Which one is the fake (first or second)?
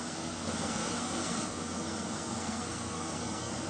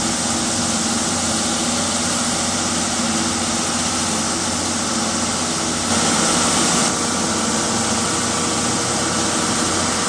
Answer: first